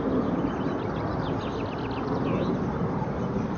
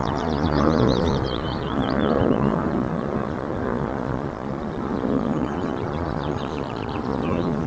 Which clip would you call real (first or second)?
first